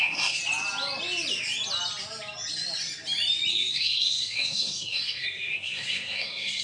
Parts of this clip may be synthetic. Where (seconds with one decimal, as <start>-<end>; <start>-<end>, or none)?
0.0-0.4; 3.5-6.6